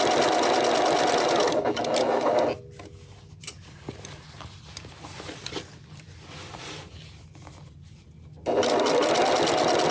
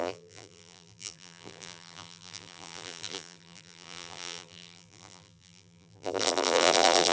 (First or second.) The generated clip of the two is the second